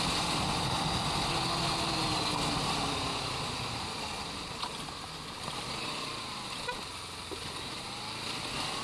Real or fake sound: real